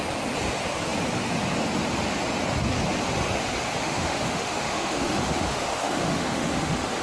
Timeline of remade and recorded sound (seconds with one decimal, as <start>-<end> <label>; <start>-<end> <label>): 0.0-3.8 recorded; 3.8-7.0 remade